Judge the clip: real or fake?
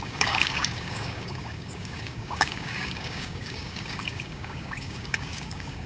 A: fake